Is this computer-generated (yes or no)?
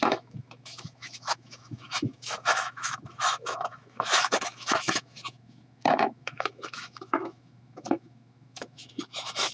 yes